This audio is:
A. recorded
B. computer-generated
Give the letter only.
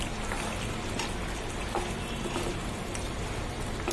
A